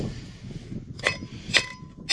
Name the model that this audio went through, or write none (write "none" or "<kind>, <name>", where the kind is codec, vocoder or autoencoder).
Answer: none